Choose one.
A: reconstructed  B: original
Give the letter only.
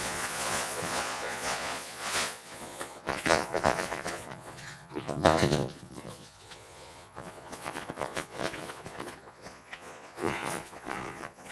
A